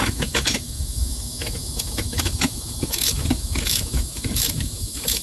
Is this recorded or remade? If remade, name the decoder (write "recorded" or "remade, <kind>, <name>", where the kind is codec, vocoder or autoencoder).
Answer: remade, autoencoder, DAC-VAE